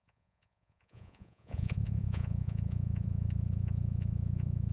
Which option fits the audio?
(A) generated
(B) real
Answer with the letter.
A